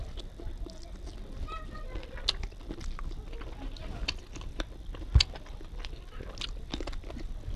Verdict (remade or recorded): recorded